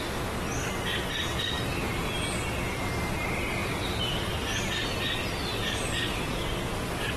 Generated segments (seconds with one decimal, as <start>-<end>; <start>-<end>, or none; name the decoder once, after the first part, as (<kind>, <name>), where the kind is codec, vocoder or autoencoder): 1.3-2.1 (vocoder, BigVGAN v2); 3.6-4.2; 5.5-6.2